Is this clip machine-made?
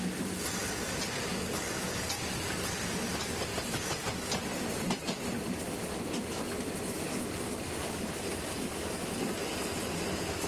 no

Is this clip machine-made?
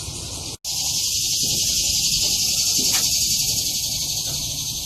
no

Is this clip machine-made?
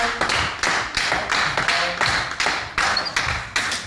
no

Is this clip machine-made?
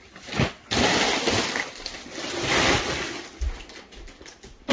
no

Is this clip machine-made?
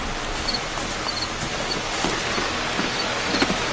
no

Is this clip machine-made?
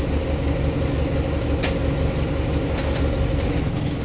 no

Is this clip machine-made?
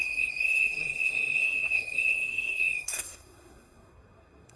yes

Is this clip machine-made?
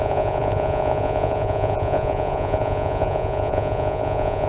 yes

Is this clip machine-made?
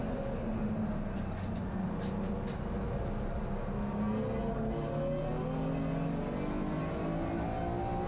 no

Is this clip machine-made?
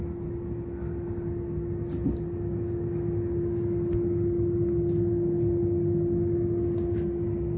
no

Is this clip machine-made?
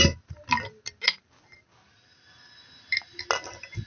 no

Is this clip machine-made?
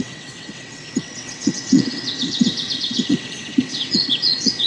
yes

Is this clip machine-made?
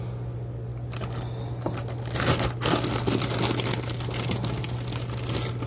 no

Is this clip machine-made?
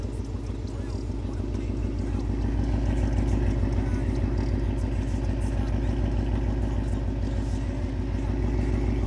no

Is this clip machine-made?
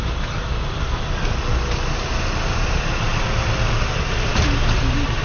no